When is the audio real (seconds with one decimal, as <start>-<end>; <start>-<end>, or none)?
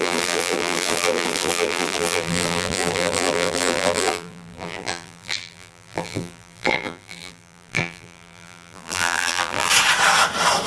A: 9.7-10.7